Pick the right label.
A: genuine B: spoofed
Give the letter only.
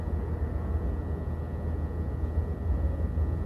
A